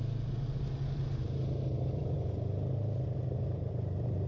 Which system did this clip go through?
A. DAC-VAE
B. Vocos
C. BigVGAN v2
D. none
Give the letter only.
D